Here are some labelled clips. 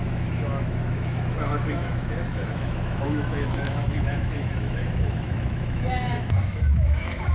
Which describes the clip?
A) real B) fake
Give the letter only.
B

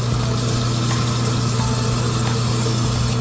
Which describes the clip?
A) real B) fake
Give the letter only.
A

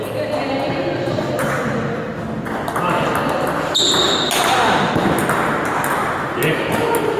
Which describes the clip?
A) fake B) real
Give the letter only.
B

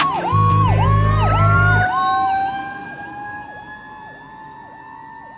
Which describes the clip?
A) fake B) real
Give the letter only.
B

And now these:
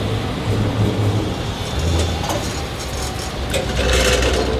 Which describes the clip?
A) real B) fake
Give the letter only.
A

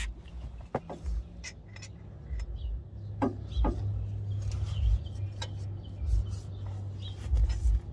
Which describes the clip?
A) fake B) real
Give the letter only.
B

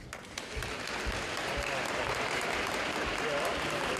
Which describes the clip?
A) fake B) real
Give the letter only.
B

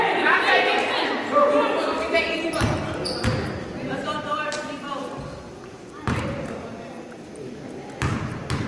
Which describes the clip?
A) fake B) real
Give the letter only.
B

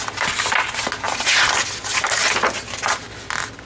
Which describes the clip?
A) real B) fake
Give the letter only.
A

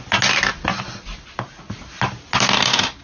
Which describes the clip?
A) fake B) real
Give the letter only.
B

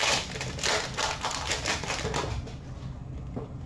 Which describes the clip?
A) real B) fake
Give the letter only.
A